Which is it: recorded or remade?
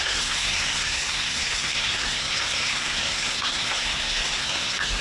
remade